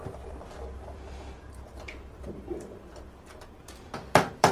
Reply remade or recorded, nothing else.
remade